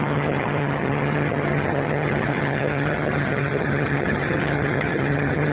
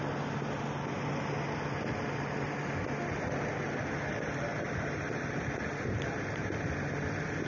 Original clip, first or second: second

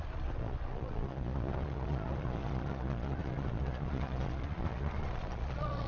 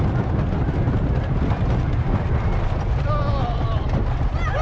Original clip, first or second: second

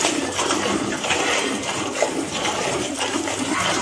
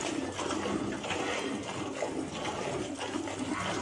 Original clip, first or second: second